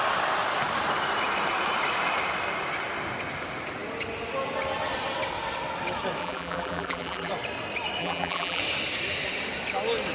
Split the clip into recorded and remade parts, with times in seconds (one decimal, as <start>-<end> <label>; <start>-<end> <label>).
0.0-6.2 recorded; 6.2-7.3 remade; 7.3-8.0 recorded; 8.0-8.6 remade; 8.6-10.1 recorded